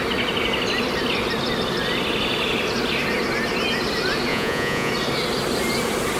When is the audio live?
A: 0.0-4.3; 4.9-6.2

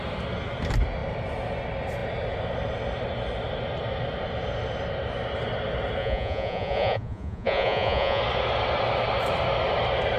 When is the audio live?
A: 0.0-6.0; 8.2-10.2

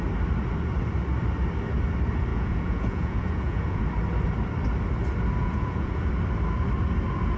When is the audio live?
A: 0.0-2.3; 3.8-5.4; 6.1-7.4

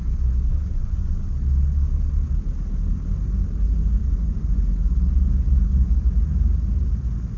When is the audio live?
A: 0.0-0.5; 1.3-4.0; 4.6-7.4

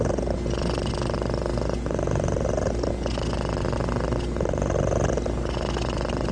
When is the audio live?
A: 0.0-6.3

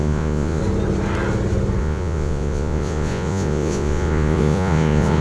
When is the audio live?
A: 0.6-1.8